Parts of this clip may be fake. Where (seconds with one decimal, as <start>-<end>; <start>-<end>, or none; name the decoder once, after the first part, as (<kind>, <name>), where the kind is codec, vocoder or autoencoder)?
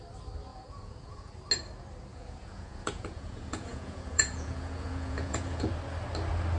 0.5-1.3 (vocoder, Vocos); 2.1-5.7